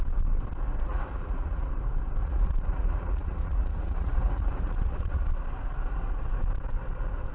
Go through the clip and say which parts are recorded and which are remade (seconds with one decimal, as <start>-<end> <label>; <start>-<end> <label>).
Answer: 0.0-0.9 recorded; 0.9-1.7 remade; 1.7-2.2 recorded; 2.2-5.3 remade; 5.3-7.3 recorded